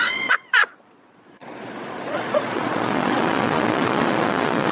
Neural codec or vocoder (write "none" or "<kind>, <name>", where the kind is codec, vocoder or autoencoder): vocoder, Vocos